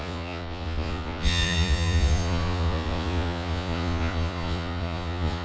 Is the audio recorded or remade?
remade